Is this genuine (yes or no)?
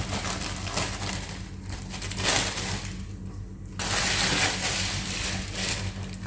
yes